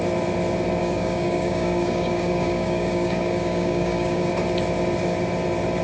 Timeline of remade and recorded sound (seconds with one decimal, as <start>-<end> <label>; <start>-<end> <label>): 0.0-0.8 recorded; 0.8-4.3 remade; 4.3-5.8 recorded